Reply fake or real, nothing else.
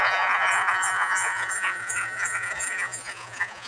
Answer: fake